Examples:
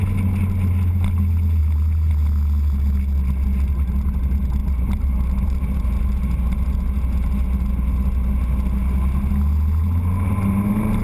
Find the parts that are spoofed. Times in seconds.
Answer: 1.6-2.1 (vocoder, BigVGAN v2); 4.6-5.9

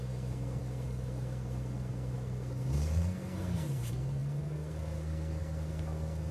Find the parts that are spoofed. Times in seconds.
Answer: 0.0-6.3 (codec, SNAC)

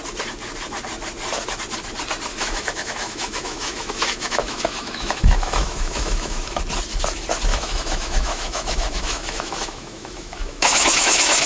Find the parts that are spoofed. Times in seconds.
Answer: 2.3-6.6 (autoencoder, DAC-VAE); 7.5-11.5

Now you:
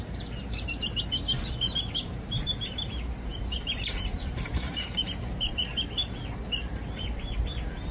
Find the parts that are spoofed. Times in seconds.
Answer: 0.0-5.7 (vocoder, BigVGAN v2)

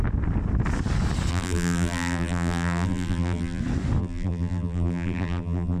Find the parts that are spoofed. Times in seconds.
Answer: 1.3-3.6 (vocoder, BigVGAN v2); 4.0-5.8

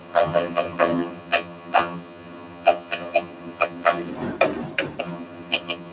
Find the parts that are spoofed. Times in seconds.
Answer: 0.0-4.1 (vocoder, HiFi-GAN); 5.0-5.9

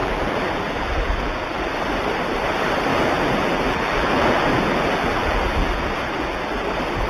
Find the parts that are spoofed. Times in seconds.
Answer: 0.0-1.6 (vocoder, BigVGAN v2); 2.9-6.6